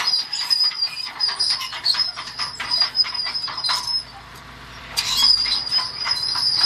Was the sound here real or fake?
fake